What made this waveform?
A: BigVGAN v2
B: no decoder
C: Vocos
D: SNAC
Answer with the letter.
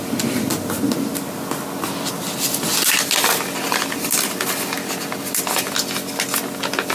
B